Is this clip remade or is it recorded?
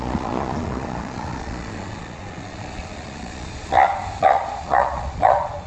remade